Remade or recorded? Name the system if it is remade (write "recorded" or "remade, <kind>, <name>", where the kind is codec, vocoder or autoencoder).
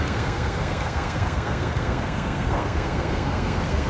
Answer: remade, codec, SNAC